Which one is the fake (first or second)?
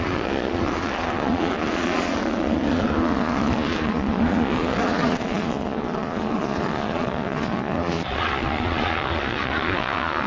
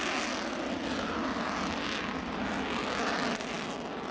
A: first